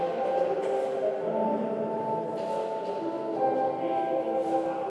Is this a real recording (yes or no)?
yes